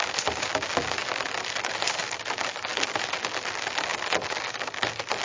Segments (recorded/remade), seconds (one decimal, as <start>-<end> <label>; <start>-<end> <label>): 0.0-5.2 recorded